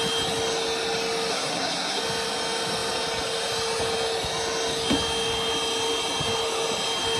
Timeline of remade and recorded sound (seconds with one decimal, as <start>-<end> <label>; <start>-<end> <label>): 0.0-1.3 recorded; 1.3-2.0 remade; 2.0-7.2 recorded